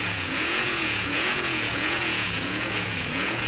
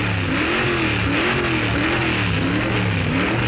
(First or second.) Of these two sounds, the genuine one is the second